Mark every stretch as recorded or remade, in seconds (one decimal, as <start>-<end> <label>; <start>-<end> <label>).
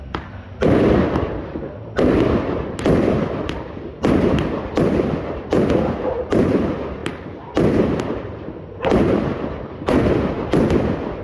0.0-11.2 recorded